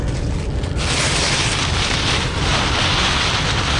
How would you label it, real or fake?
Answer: real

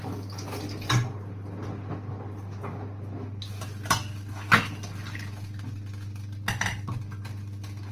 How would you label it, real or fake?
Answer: real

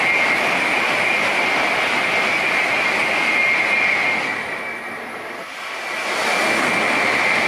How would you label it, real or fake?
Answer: real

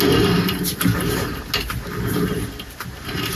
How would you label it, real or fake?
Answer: real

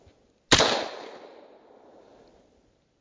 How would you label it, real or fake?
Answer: real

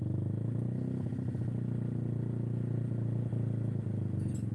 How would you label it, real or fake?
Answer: real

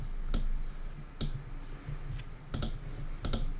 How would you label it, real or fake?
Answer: real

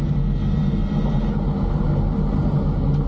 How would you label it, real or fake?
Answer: real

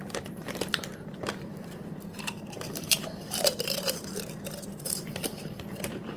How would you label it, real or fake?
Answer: fake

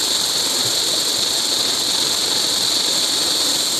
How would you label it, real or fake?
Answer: fake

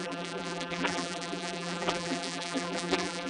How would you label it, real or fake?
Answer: fake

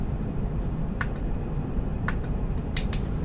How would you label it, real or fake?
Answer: fake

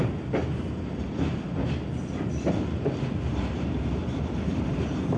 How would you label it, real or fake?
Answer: real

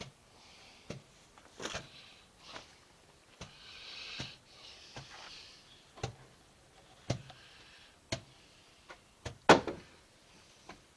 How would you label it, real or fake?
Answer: real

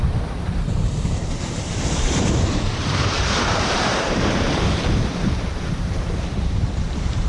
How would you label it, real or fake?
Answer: fake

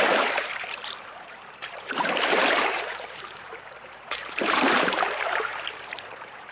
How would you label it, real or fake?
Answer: fake